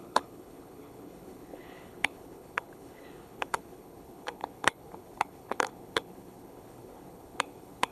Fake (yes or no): yes